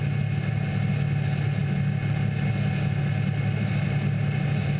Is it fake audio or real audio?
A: real